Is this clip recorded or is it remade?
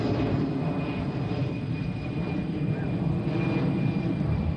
recorded